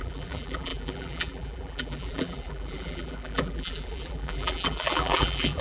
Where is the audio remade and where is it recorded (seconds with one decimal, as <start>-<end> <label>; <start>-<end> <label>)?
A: 0.0-5.6 remade